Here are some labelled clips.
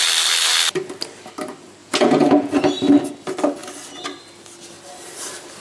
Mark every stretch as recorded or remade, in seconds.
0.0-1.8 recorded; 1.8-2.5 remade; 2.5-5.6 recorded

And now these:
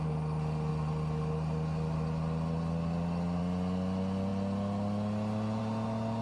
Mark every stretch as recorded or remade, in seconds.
0.0-6.2 recorded

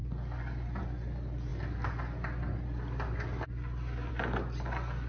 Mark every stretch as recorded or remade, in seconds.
0.0-5.1 recorded

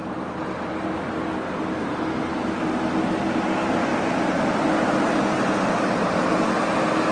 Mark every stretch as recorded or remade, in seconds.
0.0-2.3 recorded; 2.3-3.9 remade; 3.9-5.8 recorded; 5.8-7.1 remade

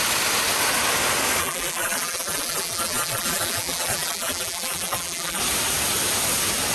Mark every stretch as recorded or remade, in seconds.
0.0-1.4 recorded; 1.4-5.4 remade; 5.4-6.7 recorded

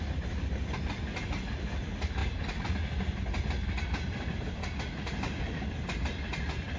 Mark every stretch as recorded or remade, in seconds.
0.0-6.8 recorded

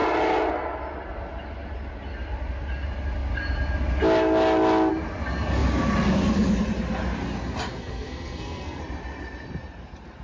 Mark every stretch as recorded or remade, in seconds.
0.0-7.7 recorded; 7.7-8.8 remade; 8.8-10.2 recorded